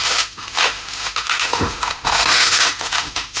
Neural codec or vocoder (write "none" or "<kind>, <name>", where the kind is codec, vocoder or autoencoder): autoencoder, DAC-VAE